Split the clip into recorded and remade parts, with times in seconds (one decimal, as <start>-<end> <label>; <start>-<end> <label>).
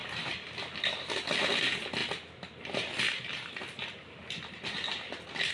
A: 0.0-5.5 recorded